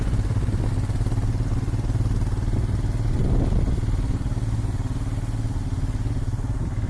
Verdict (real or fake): real